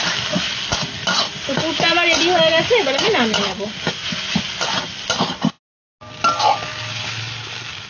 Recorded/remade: recorded